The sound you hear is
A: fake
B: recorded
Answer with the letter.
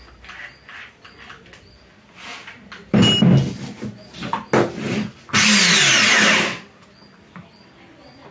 B